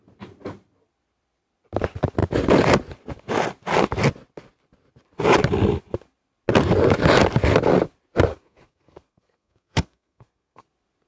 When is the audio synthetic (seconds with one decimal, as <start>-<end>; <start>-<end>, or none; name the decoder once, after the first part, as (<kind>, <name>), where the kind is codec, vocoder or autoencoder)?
8.3-10.7 (codec, SNAC)